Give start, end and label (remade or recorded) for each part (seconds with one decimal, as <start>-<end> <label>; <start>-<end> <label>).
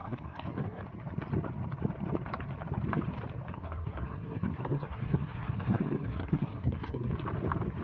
0.0-0.8 remade; 0.8-3.5 recorded; 3.5-7.1 remade; 7.1-7.8 recorded